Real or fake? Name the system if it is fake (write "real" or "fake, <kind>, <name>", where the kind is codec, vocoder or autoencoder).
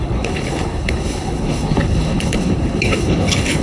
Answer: fake, codec, HILCodec